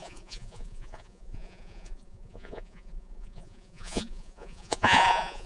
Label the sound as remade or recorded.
remade